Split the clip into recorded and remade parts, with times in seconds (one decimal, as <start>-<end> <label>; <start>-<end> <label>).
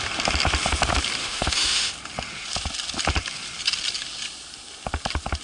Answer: 0.0-1.2 recorded; 1.2-1.9 remade; 1.9-5.4 recorded